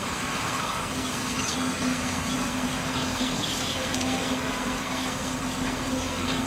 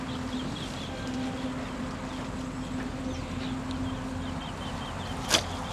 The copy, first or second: first